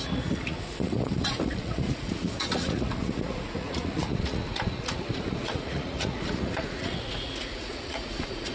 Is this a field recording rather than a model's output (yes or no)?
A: no